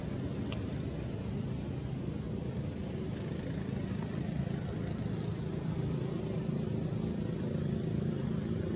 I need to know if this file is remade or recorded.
recorded